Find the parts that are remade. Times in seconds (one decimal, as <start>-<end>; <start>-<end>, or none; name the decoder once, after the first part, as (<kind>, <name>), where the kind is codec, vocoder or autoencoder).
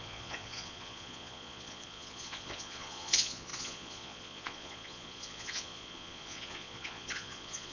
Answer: 0.0-7.7 (vocoder, Vocos)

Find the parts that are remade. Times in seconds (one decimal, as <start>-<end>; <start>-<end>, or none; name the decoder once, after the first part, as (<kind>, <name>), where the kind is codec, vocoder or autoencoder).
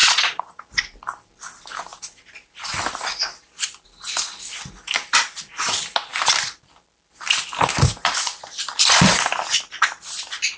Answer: 0.0-0.6 (vocoder, Vocos)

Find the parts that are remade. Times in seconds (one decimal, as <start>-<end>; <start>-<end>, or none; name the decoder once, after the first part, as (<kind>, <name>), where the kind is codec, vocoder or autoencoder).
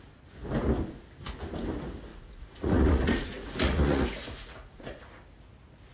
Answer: 2.1-5.0 (vocoder, Vocos)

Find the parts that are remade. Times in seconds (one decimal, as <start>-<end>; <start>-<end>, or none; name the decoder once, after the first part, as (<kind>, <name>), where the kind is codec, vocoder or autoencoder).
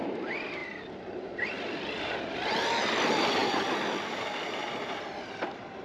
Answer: none